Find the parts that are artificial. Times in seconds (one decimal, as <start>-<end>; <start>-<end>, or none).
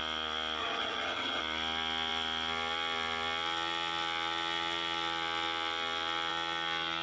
0.6-1.4